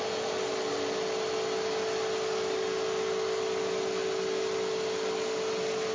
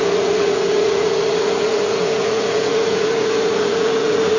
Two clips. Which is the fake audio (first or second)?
second